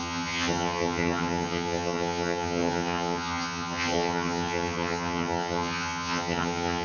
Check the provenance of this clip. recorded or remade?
remade